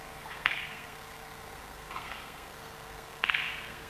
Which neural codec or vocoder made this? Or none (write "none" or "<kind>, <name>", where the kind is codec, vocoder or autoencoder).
codec, SNAC